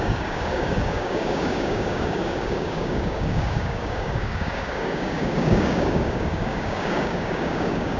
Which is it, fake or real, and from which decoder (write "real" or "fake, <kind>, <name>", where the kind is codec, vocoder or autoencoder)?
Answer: fake, codec, DAC